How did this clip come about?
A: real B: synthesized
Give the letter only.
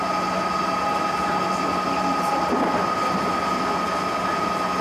A